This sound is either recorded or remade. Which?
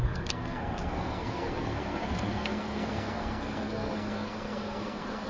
remade